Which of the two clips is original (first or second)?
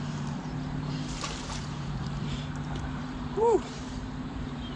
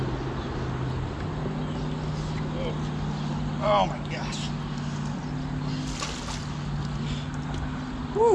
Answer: second